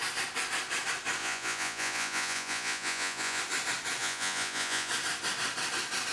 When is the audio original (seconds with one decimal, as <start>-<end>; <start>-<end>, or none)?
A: 0.0-1.2; 3.4-4.0; 4.9-6.1